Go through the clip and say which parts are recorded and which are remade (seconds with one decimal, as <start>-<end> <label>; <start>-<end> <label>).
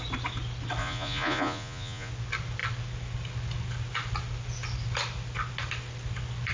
0.0-0.8 recorded; 0.8-2.1 remade; 2.1-6.5 recorded